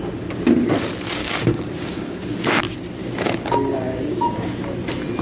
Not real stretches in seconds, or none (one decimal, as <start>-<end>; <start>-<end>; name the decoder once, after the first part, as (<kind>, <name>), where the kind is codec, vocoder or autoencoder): 1.2-2.6 (codec, DAC); 3.0-4.5